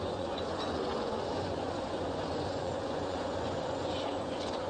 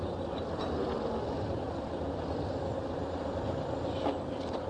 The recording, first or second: second